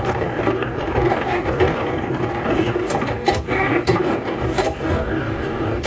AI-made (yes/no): yes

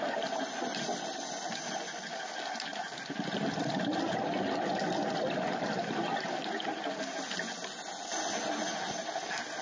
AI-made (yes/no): no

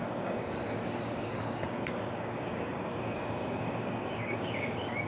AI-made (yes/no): yes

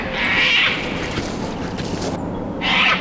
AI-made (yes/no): no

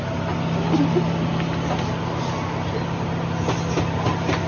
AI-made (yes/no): no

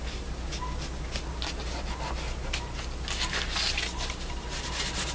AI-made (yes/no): no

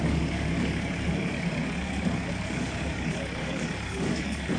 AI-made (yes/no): yes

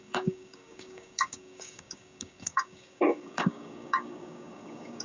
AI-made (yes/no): yes